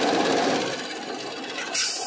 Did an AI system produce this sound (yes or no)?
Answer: no